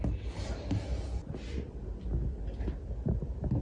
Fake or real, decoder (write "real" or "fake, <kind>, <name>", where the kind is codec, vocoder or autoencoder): real